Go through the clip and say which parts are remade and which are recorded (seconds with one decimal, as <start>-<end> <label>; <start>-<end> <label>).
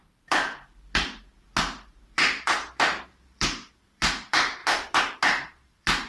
0.0-4.6 remade; 4.6-5.2 recorded; 5.2-6.1 remade